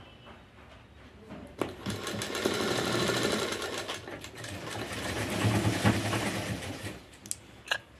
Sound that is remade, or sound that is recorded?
recorded